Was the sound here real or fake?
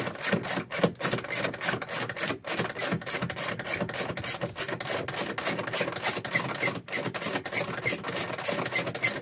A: real